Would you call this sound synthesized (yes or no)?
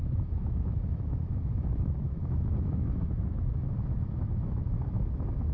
yes